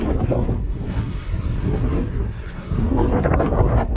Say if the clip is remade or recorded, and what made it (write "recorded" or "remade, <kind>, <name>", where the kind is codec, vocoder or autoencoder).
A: remade, codec, SNAC